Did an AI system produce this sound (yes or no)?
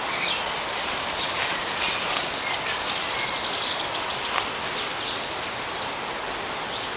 yes